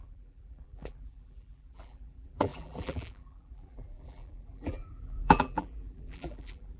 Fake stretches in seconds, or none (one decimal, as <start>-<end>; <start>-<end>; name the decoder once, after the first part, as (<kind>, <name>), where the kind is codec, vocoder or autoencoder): 0.0-6.8 (vocoder, BigVGAN v2)